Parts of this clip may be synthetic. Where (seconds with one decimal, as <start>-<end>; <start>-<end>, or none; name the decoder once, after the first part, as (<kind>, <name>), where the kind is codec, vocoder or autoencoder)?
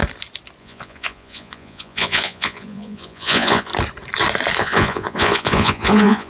0.6-3.7 (vocoder, Vocos); 4.6-6.3